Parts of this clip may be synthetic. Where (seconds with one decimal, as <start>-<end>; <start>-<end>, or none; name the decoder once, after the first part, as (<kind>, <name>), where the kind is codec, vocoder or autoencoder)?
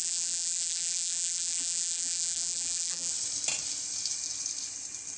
0.0-3.1 (vocoder, BigVGAN v2)